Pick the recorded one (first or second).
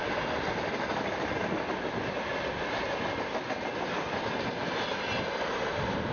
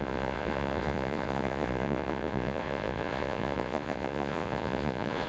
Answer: first